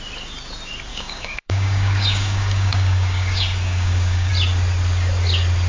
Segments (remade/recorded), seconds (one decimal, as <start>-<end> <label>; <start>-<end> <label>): 0.0-0.9 recorded; 0.9-4.3 remade; 4.3-5.7 recorded